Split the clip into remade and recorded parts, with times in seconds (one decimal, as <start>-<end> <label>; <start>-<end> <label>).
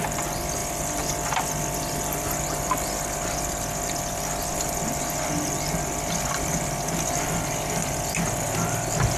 0.0-9.2 recorded